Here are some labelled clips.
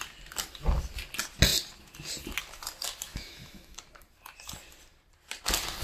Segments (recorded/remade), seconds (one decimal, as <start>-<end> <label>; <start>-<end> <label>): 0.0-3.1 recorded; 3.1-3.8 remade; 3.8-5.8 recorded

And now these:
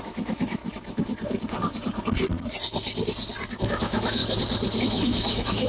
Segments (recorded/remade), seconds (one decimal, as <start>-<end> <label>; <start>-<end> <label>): 0.0-0.6 remade; 0.6-3.5 recorded; 3.5-4.2 remade; 4.2-4.8 recorded; 4.8-5.7 remade

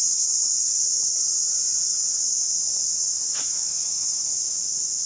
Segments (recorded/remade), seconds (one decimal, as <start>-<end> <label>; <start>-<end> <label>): 0.0-0.8 remade; 0.8-2.5 recorded; 2.5-5.1 remade

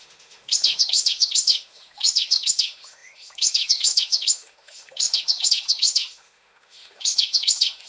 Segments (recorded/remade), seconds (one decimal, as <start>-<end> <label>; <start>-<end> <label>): 0.0-7.9 remade

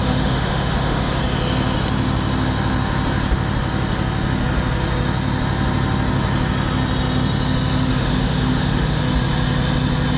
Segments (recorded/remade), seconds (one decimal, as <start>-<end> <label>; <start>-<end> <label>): 0.0-1.2 remade; 1.2-7.9 recorded; 7.9-9.0 remade; 9.0-10.2 recorded

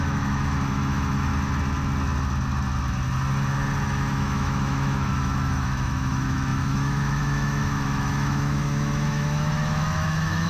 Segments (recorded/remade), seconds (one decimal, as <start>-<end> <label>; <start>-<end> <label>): 0.0-1.3 remade; 1.3-3.8 recorded; 3.8-10.5 remade